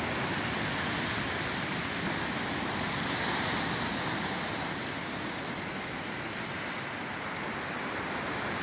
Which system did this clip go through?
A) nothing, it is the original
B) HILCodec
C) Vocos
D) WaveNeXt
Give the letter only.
A